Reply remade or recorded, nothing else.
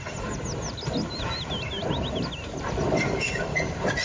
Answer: recorded